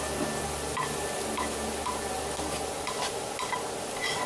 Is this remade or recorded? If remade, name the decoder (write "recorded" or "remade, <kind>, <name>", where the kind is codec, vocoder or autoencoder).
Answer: recorded